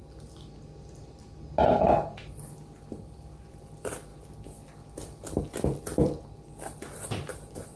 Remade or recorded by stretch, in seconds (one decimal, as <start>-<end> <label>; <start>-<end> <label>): 0.0-3.0 recorded; 3.0-7.8 remade